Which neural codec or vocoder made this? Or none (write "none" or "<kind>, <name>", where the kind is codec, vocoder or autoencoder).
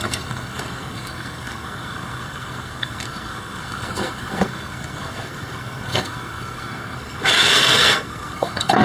codec, SNAC